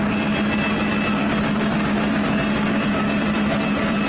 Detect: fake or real real